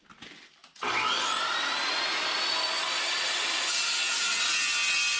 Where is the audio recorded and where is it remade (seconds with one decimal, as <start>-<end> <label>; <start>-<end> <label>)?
0.0-5.2 recorded